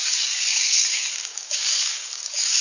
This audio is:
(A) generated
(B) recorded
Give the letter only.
A